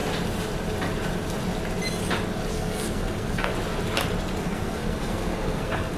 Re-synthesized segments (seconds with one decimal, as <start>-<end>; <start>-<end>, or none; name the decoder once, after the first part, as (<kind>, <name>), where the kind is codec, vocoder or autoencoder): 2.5-3.5 (codec, SNAC); 4.4-6.0